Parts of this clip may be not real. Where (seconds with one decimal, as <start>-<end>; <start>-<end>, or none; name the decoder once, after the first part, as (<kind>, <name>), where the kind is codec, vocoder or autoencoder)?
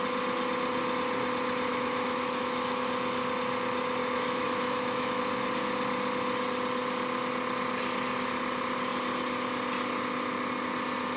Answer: 1.7-2.8 (autoencoder, DAC-VAE); 4.0-5.2